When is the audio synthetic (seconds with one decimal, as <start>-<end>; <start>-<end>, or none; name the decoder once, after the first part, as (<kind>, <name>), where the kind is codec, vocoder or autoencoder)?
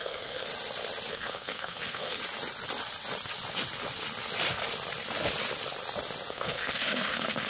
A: 0.0-0.5 (codec, SNAC); 1.1-2.2; 6.3-7.5